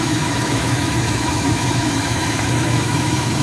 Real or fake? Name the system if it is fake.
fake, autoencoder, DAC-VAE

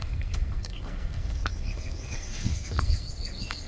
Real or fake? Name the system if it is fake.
fake, codec, SNAC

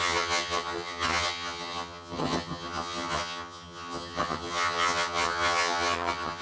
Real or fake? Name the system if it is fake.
fake, vocoder, HiFi-GAN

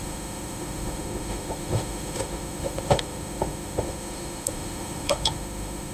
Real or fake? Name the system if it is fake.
fake, autoencoder, DAC-VAE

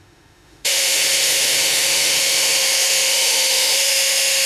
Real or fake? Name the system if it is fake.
fake, autoencoder, DAC-VAE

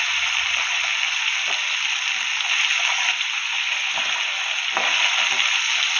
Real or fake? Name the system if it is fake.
real